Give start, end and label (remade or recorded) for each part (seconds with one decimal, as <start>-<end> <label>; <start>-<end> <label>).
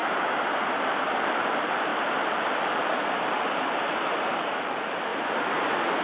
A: 0.0-1.2 recorded; 1.2-5.1 remade; 5.1-6.0 recorded